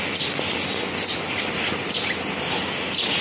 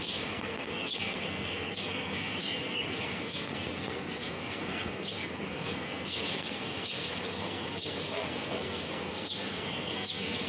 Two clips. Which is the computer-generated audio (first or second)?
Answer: second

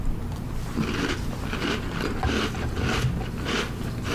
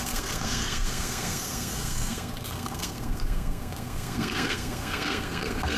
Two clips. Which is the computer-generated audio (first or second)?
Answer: second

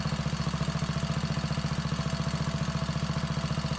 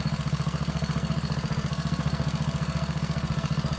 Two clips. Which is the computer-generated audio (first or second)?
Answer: second